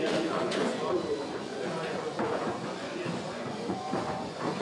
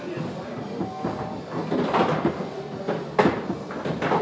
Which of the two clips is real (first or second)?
second